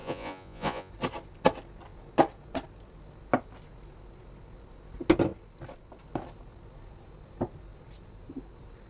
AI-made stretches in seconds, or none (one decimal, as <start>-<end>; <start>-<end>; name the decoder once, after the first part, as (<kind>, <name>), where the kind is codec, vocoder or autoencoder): 0.0-0.9 (vocoder, Vocos)